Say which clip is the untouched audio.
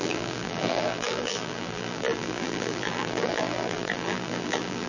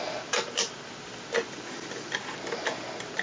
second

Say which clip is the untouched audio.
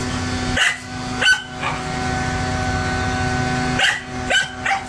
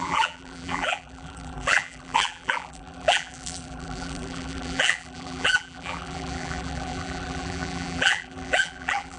first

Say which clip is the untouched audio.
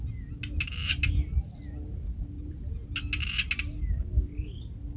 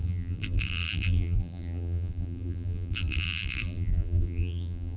first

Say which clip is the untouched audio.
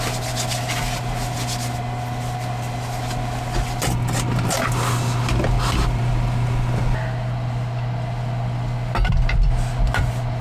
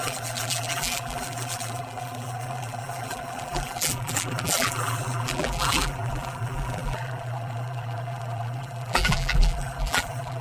first